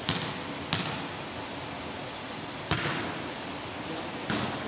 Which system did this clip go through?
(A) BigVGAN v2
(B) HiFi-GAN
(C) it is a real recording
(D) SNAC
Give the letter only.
C